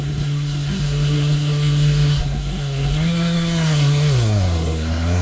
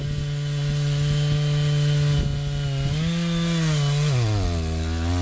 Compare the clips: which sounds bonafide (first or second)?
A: second